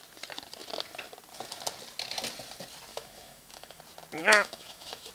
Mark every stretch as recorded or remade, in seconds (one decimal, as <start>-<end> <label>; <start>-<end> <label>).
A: 0.0-2.9 recorded; 2.9-3.8 remade; 3.8-4.2 recorded; 4.2-5.1 remade